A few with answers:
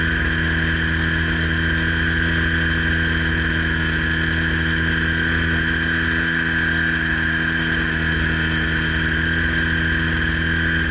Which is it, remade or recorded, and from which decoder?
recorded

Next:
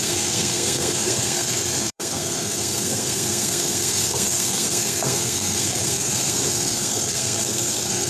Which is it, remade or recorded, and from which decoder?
remade, codec, SNAC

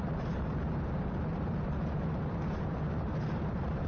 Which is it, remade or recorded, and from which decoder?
remade, vocoder, BigVGAN v2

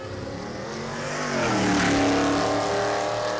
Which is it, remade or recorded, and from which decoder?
recorded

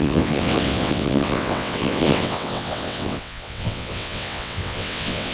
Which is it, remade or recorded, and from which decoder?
remade, vocoder, WaveNeXt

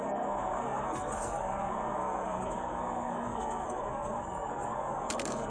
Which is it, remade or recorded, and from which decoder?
remade, codec, SNAC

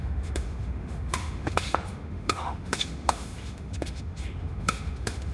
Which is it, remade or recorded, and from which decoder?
remade, autoencoder, DAC-VAE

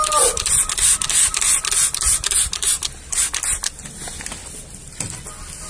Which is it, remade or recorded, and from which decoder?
recorded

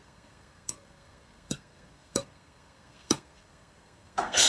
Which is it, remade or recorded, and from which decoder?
remade, codec, SNAC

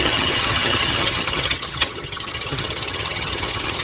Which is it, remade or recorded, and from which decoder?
remade, vocoder, HiFi-GAN